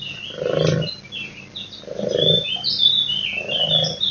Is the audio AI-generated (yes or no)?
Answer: no